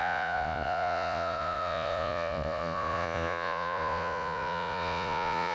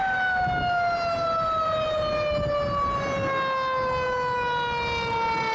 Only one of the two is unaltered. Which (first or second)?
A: second